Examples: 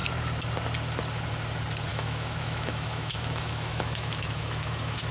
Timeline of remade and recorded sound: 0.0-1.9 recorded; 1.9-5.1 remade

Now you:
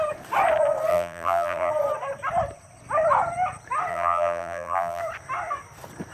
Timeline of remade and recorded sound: 0.0-0.9 recorded; 0.9-1.7 remade; 1.7-3.9 recorded; 3.9-5.0 remade; 5.0-6.1 recorded

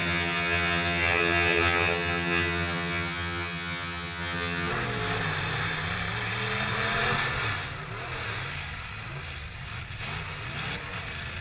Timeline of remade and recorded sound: 0.0-4.7 remade; 4.7-11.4 recorded

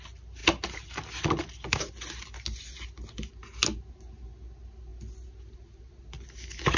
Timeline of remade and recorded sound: 0.0-6.8 recorded

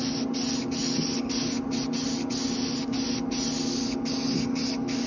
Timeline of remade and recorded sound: 0.0-5.1 recorded

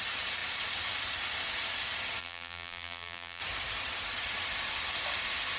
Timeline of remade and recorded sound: 0.0-2.2 recorded; 2.2-3.4 remade; 3.4-5.6 recorded

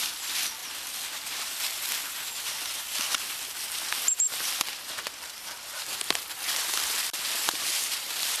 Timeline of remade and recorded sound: 0.0-8.4 remade

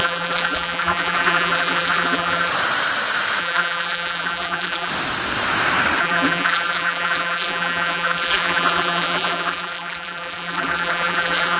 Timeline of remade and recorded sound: 0.0-2.5 remade; 2.5-3.4 recorded; 3.4-4.9 remade; 4.9-6.0 recorded; 6.0-11.6 remade